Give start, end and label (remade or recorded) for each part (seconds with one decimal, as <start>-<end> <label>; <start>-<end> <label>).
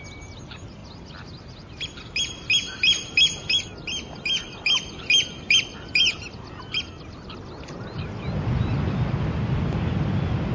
0.0-10.5 recorded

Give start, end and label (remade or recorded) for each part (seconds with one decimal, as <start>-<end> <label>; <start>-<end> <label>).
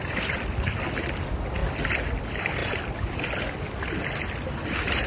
0.0-1.6 remade; 1.6-2.2 recorded; 2.2-5.1 remade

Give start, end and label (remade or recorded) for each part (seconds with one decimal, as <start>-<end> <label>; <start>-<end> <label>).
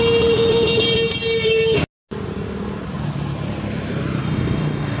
0.0-4.2 recorded; 4.2-5.0 remade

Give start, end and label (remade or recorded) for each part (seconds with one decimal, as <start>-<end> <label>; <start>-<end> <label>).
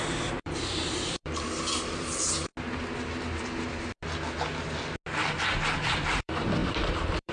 0.0-2.5 remade; 2.5-5.9 recorded; 5.9-7.3 remade